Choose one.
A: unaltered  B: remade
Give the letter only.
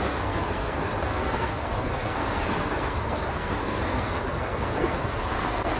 B